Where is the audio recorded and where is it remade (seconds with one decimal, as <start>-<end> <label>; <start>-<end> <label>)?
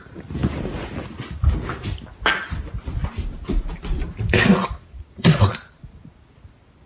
0.0-4.6 recorded; 4.6-5.5 remade; 5.5-6.9 recorded